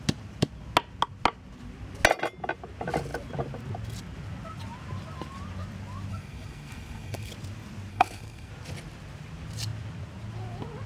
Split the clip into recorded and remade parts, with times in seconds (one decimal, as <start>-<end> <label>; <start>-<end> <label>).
0.0-6.1 recorded; 6.1-7.3 remade; 7.3-7.9 recorded; 7.9-8.5 remade; 8.5-10.9 recorded